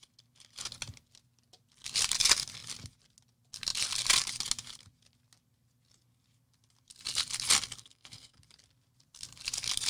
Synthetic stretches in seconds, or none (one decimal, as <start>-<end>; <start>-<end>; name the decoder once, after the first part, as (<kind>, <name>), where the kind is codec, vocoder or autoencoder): 7.8-8.4 (codec, SNAC)